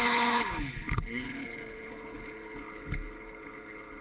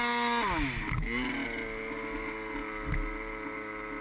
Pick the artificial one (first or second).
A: first